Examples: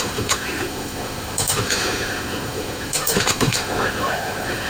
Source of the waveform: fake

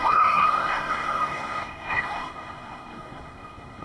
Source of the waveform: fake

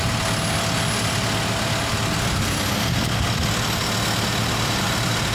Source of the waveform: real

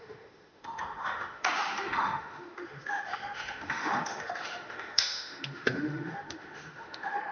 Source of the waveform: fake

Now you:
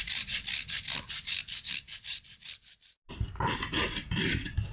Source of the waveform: real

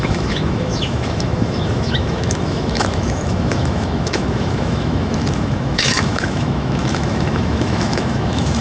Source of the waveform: fake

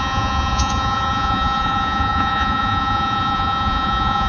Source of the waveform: fake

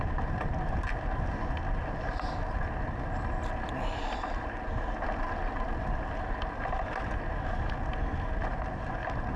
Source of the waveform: real